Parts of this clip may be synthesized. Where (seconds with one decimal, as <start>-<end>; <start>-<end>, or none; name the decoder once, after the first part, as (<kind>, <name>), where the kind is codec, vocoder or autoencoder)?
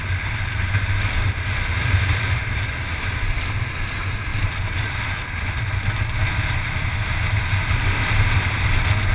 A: 4.3-5.1 (vocoder, BigVGAN v2)